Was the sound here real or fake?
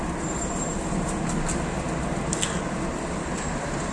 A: real